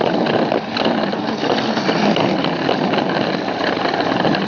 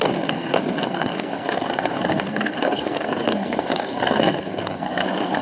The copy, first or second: second